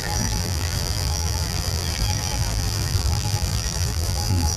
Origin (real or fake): fake